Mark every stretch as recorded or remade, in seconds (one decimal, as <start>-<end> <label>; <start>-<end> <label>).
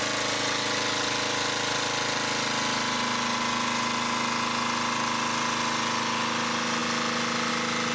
0.0-7.9 recorded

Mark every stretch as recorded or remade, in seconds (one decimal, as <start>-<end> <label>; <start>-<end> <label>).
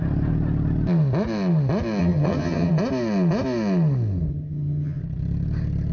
0.0-2.0 recorded; 2.0-2.7 remade; 2.7-4.3 recorded; 4.3-5.0 remade; 5.0-5.9 recorded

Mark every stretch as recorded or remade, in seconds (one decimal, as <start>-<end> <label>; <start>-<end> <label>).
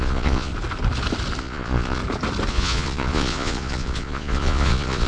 0.0-0.5 remade; 0.5-1.4 recorded; 1.4-2.0 remade; 2.0-2.5 recorded; 2.5-5.1 remade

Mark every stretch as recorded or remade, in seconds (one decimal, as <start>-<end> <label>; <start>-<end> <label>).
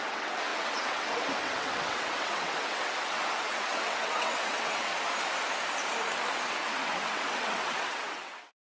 0.0-4.9 remade; 4.9-6.5 recorded; 6.5-8.7 remade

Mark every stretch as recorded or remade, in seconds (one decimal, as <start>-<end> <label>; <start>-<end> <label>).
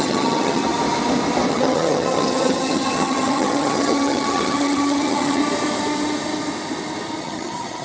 0.0-0.6 remade; 0.6-1.5 recorded; 1.5-5.4 remade; 5.4-7.2 recorded; 7.2-7.8 remade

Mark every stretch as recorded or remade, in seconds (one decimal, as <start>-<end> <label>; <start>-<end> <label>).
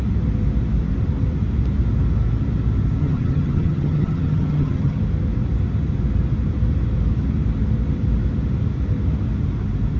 0.0-3.0 recorded; 3.0-5.0 remade; 5.0-10.0 recorded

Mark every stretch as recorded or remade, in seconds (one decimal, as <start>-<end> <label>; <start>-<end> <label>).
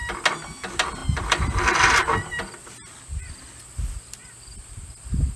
0.0-1.0 recorded; 1.0-3.5 remade; 3.5-4.2 recorded; 4.2-5.4 remade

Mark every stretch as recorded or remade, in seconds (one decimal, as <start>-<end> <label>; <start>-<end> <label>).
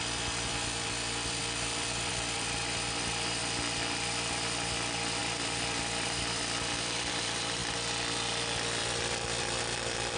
0.0-3.4 remade; 3.4-4.3 recorded; 4.3-7.6 remade; 7.6-8.8 recorded; 8.8-10.2 remade